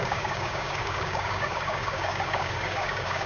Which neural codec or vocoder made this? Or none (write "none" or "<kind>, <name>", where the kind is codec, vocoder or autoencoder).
codec, DAC